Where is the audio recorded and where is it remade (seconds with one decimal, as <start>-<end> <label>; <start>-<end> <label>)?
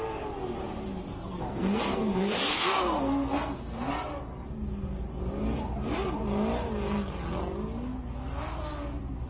0.0-1.1 recorded; 1.1-3.9 remade; 3.9-9.3 recorded